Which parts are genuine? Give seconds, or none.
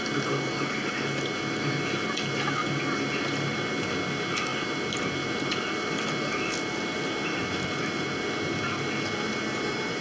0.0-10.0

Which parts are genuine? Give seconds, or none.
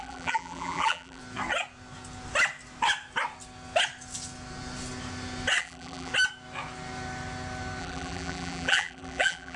1.2-5.6; 6.1-7.8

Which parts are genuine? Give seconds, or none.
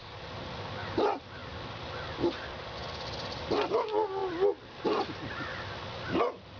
0.0-6.6